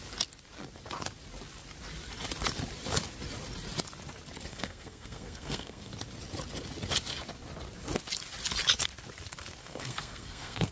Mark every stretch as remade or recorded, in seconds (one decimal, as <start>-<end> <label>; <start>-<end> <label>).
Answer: 0.0-4.5 recorded; 4.5-5.9 remade; 5.9-9.6 recorded; 9.6-10.7 remade